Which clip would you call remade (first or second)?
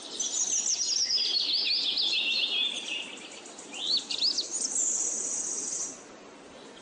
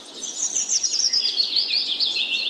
second